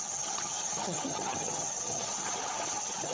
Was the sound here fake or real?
fake